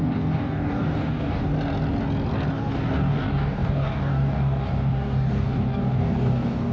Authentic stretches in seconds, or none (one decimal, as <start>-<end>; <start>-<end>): 1.5-2.5